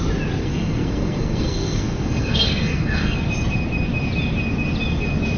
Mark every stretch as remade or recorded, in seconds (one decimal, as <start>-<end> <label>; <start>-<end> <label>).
0.0-0.4 recorded; 0.4-3.3 remade; 3.3-5.4 recorded